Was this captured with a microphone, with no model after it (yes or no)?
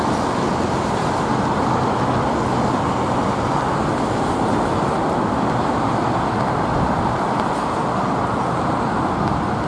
yes